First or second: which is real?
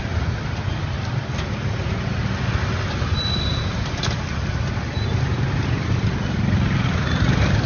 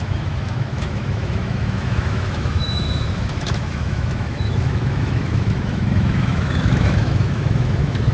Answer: first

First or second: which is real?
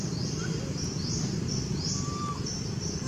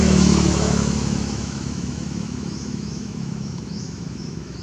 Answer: first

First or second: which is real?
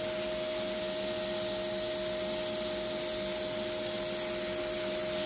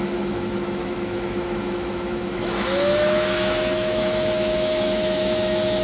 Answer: first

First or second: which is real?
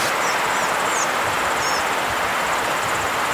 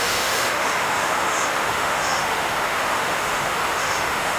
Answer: first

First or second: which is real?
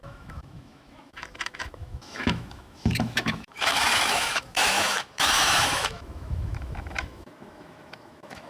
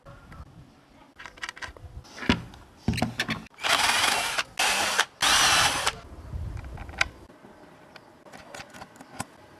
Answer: second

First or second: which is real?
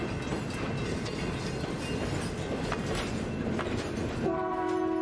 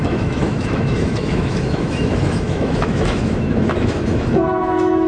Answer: first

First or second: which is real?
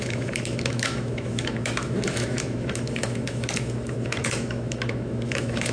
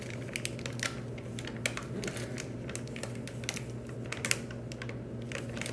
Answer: second